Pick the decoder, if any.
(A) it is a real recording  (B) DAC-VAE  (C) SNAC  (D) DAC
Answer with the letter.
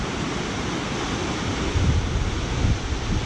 A